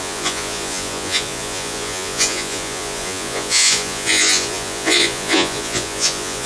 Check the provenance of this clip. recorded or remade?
remade